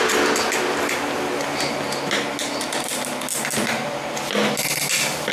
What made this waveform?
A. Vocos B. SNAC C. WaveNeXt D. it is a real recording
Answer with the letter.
D